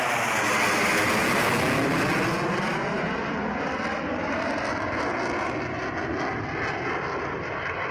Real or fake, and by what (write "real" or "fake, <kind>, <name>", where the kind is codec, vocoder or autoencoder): real